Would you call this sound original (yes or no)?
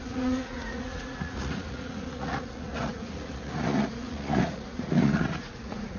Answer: no